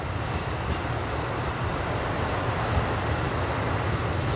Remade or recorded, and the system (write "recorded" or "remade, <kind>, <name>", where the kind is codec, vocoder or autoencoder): recorded